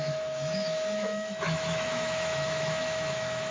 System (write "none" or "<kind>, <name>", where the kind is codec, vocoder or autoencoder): autoencoder, DAC-VAE